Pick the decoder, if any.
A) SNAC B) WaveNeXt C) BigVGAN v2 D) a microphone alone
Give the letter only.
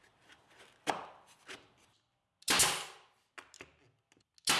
D